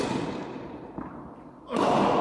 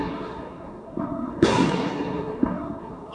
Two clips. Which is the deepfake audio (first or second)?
second